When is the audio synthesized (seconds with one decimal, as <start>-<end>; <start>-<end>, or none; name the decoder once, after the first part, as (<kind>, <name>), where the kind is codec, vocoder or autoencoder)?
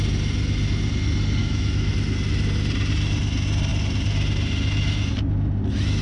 1.4-1.9 (autoencoder, DAC-VAE)